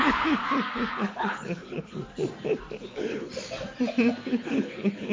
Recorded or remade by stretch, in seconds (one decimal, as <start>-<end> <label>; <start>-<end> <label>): 0.0-0.4 remade; 0.4-0.9 recorded; 0.9-2.0 remade; 2.0-2.8 recorded; 2.8-3.3 remade; 3.3-4.3 recorded; 4.3-5.1 remade